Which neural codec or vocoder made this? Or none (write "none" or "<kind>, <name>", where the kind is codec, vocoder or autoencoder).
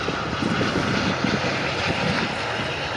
none